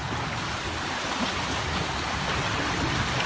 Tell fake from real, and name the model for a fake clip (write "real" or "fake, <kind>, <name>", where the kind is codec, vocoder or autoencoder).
real